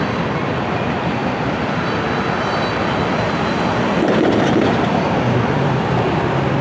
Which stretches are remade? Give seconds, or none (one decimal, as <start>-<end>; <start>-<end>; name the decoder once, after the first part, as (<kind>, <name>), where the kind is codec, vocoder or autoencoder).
none